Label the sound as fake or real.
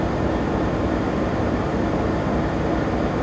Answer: real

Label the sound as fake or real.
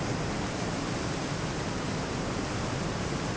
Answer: fake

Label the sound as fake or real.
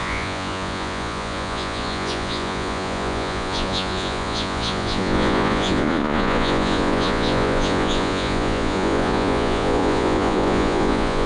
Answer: fake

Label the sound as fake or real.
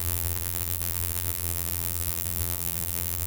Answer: fake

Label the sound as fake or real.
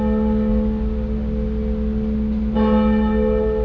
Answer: real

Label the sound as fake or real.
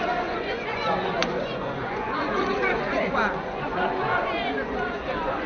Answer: fake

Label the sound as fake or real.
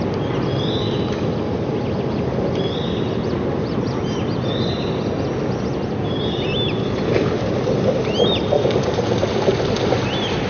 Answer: real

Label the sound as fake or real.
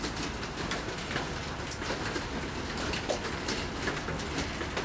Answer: real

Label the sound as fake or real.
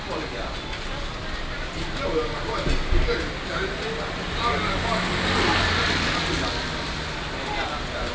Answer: real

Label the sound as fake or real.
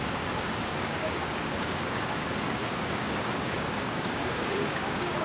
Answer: fake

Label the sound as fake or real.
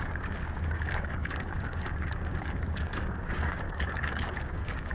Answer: fake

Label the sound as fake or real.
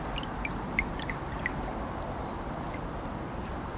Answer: real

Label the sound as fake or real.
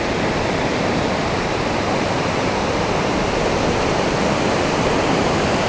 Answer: real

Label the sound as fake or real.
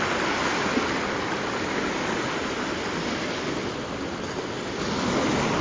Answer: real